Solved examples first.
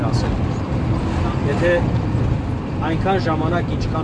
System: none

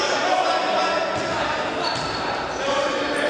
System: none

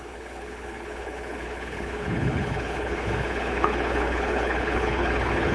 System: codec, HILCodec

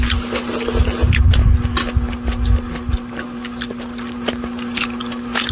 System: none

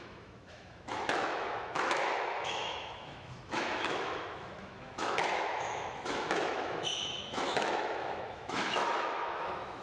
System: autoencoder, DAC-VAE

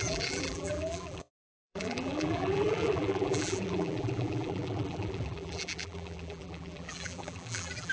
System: vocoder, BigVGAN v2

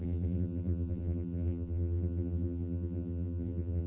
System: vocoder, BigVGAN v2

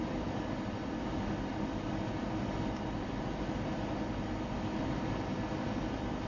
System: none